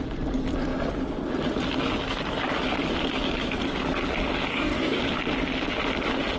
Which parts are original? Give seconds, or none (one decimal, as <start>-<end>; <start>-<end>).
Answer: 0.0-4.5; 5.0-6.4